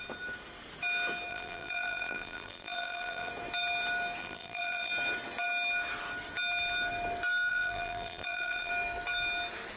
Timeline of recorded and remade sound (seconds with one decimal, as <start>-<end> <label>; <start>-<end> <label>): 0.0-1.3 recorded; 1.3-3.3 remade; 3.3-4.2 recorded; 4.2-4.9 remade; 4.9-7.5 recorded; 7.5-8.7 remade; 8.7-9.8 recorded